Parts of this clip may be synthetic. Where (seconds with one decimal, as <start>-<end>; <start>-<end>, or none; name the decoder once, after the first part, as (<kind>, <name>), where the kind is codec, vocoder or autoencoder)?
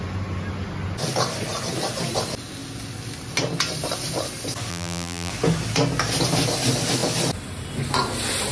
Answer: 4.7-5.3 (vocoder, BigVGAN v2)